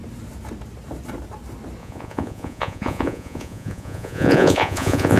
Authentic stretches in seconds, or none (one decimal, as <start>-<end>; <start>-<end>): 0.0-1.8